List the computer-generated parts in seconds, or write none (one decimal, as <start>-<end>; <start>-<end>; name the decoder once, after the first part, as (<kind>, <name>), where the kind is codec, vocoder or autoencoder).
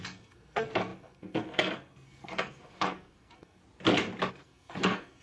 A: 0.0-3.6 (codec, SNAC); 4.3-5.2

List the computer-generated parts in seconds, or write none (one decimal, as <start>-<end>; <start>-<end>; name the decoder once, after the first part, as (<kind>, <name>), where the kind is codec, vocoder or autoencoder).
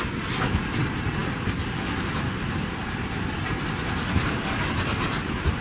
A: none